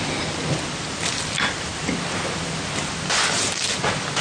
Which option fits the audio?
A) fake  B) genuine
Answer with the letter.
B